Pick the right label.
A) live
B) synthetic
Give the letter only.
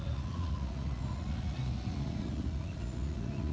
B